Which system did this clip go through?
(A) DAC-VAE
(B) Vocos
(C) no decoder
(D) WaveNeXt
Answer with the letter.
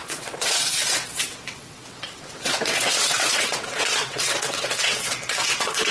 D